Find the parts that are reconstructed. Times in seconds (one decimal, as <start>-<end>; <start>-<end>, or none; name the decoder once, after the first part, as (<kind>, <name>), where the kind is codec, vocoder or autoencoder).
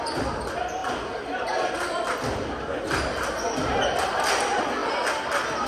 none